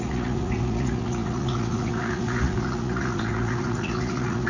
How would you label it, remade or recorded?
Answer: remade